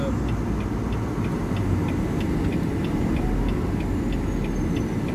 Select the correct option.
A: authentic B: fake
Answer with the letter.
A